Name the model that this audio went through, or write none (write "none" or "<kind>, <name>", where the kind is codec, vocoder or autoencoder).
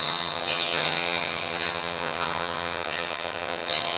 vocoder, HiFi-GAN